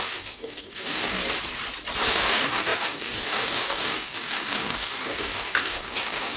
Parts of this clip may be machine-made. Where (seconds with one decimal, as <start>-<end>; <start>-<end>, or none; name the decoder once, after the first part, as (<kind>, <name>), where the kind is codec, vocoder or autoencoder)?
0.0-1.2 (codec, DAC); 2.1-6.4